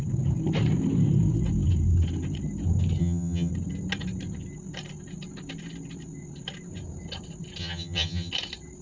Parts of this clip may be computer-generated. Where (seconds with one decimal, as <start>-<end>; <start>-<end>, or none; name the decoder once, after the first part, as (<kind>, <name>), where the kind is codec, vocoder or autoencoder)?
3.0-3.5 (vocoder, HiFi-GAN); 7.6-8.3